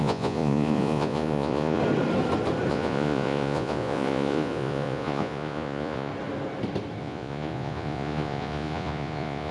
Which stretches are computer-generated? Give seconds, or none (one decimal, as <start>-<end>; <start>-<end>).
0.0-1.8; 2.7-6.1; 7.0-9.5